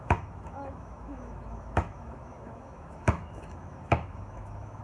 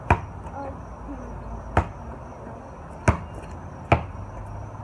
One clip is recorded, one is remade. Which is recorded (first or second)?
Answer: second